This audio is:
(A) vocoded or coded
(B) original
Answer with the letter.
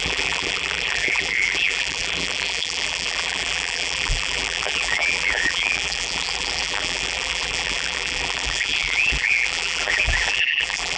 A